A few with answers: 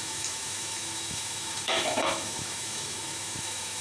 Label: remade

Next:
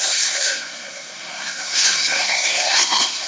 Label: remade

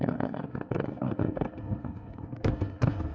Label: remade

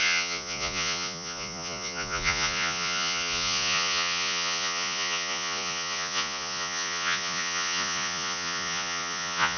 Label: remade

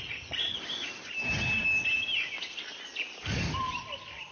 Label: recorded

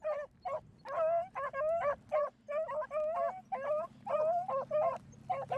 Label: recorded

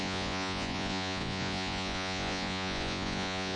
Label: remade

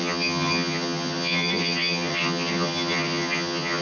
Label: remade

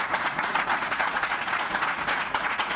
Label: remade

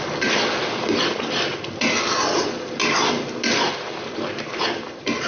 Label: recorded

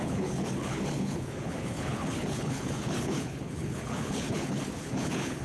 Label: remade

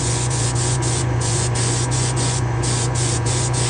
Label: remade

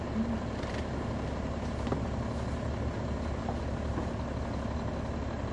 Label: recorded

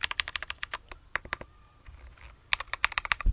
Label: recorded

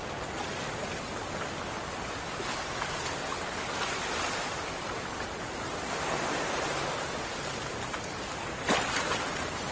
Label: recorded